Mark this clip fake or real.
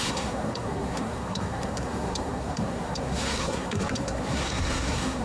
fake